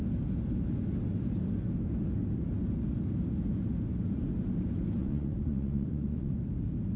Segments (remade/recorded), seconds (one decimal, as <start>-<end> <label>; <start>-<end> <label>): 0.0-5.0 recorded; 5.0-6.3 remade; 6.3-7.0 recorded